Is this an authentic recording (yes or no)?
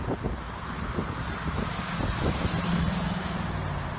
yes